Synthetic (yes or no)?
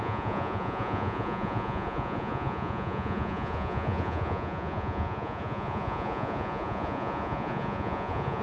yes